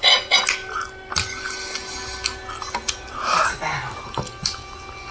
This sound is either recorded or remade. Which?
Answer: recorded